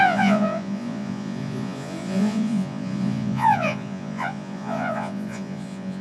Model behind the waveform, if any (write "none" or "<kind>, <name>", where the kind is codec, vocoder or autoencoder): vocoder, Vocos